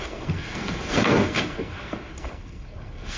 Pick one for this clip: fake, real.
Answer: fake